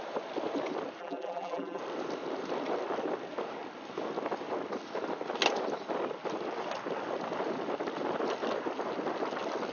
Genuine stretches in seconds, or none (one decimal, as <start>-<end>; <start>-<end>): 0.0-1.0; 1.8-9.7